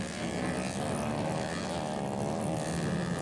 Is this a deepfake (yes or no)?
no